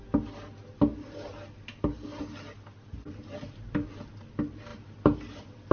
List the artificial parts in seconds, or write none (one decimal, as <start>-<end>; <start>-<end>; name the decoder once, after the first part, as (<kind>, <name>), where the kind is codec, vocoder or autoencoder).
none